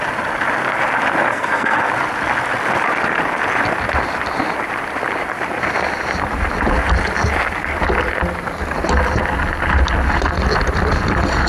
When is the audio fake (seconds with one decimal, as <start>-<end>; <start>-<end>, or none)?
1.3-1.9